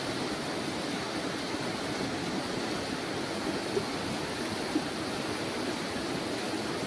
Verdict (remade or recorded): recorded